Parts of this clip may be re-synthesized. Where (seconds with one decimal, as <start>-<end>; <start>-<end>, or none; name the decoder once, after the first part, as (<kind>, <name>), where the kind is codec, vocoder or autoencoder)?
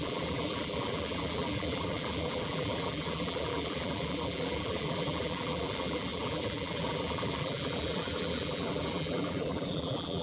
0.0-10.2 (vocoder, BigVGAN v2)